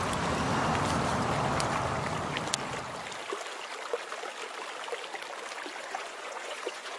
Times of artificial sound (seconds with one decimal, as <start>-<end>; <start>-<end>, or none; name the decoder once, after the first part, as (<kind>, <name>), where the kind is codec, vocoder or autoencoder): 5.8-7.0 (vocoder, Vocos)